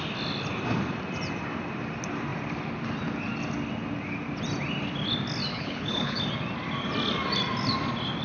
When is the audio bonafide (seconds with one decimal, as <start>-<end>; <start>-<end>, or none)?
0.0-5.5; 6.2-8.2